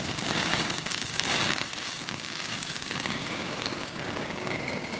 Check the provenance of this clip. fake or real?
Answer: fake